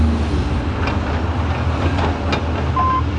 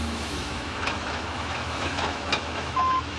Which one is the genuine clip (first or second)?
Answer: first